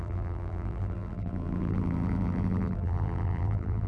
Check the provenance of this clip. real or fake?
fake